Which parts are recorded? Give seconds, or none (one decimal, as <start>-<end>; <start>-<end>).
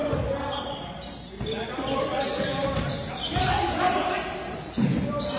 none